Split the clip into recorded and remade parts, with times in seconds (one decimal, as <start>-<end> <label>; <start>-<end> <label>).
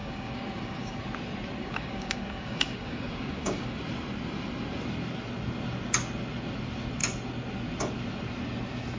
0.0-1.0 remade; 1.0-1.6 recorded; 1.6-3.8 remade; 3.8-9.0 recorded